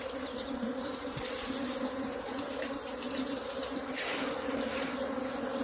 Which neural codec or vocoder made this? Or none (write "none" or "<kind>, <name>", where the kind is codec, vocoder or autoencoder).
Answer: vocoder, BigVGAN v2